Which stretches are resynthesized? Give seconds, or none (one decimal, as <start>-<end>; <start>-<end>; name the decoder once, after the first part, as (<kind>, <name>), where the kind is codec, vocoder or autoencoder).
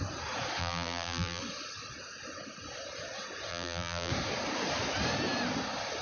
0.6-1.4 (vocoder, BigVGAN v2); 3.5-4.1